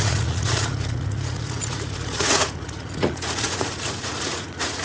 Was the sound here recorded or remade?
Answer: remade